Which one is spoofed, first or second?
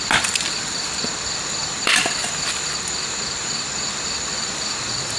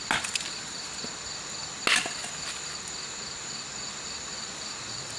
first